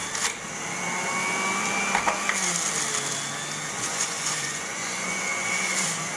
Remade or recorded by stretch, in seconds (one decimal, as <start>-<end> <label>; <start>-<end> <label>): 0.0-3.7 recorded; 3.7-6.2 remade